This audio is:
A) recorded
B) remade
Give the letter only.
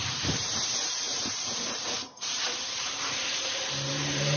B